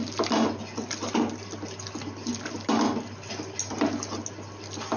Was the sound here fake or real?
real